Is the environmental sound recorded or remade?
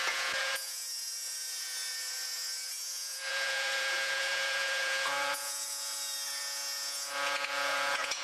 remade